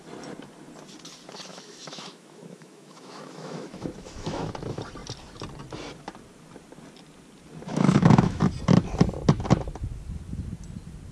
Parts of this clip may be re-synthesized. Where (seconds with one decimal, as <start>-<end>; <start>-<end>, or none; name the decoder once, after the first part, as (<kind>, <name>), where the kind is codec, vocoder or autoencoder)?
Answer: 1.5-4.5 (autoencoder, DAC-VAE); 7.7-8.4